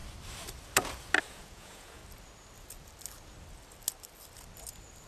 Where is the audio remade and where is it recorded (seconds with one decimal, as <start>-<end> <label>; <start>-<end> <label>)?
0.0-1.3 recorded; 1.3-2.0 remade; 2.0-5.1 recorded